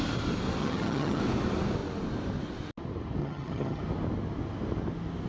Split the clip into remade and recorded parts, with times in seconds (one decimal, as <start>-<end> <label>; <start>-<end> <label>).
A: 0.0-0.6 recorded; 0.6-1.2 remade; 1.2-3.2 recorded; 3.2-3.8 remade; 3.8-5.3 recorded